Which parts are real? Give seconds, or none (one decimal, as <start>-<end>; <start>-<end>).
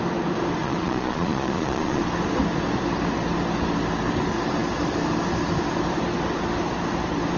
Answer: 0.0-0.6; 2.0-7.4